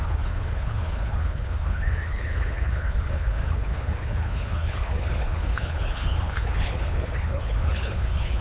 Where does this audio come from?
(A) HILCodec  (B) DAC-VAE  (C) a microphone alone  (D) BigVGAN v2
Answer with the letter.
A